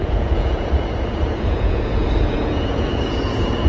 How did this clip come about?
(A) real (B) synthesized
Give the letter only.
B